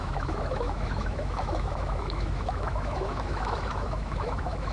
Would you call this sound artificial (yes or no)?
yes